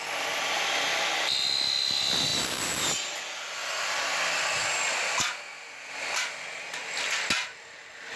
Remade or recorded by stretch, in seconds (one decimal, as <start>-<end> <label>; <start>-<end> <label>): 0.0-8.2 recorded